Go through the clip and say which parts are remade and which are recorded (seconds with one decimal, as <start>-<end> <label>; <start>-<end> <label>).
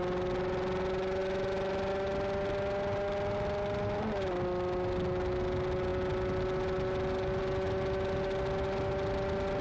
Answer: 0.0-9.6 recorded